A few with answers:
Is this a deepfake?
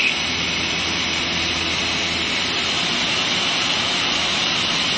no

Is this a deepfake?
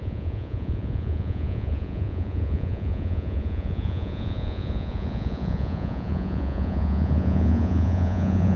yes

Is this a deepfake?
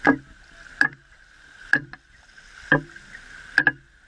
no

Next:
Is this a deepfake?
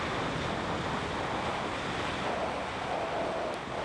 no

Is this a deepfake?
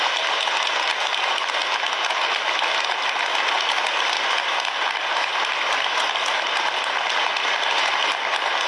no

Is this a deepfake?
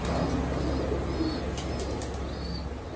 no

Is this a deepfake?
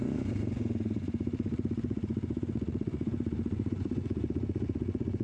yes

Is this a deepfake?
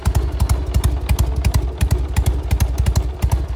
no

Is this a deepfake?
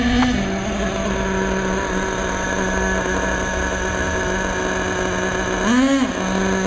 no